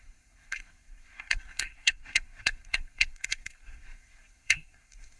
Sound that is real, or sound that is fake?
fake